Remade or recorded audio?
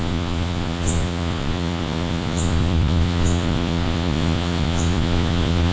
remade